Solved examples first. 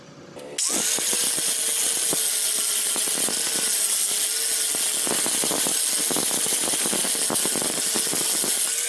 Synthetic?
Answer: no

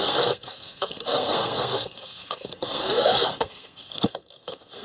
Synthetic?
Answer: yes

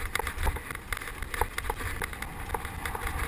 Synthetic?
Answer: no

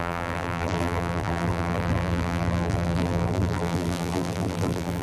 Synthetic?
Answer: yes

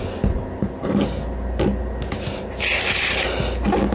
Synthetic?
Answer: no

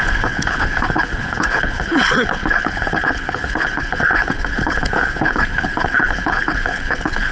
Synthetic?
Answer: yes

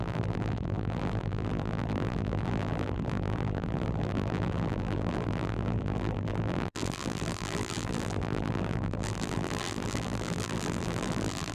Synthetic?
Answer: yes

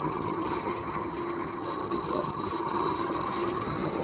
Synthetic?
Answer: yes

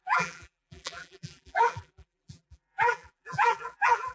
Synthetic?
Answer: yes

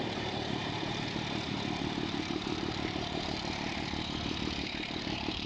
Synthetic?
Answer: yes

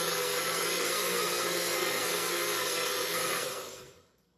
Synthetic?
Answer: yes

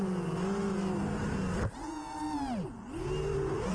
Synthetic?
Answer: no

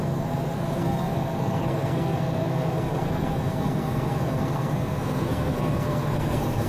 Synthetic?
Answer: yes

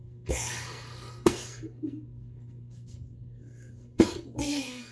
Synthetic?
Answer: yes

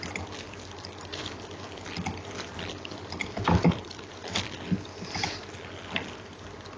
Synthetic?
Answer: yes